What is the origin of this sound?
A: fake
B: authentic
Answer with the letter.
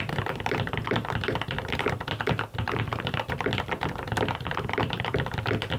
A